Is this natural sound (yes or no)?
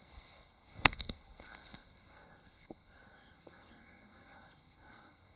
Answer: no